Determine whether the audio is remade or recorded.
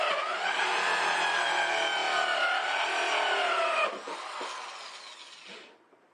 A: recorded